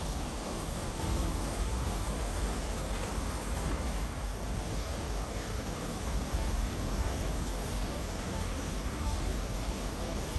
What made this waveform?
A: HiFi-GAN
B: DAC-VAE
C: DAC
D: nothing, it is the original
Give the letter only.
C